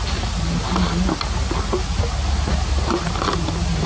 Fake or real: real